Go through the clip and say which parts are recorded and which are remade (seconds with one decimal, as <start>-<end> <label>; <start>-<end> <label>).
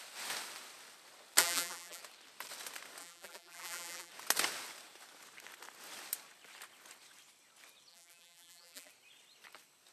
0.0-1.4 recorded; 1.4-2.0 remade; 2.0-3.0 recorded; 3.0-4.1 remade; 4.1-7.9 recorded; 7.9-8.9 remade; 8.9-9.9 recorded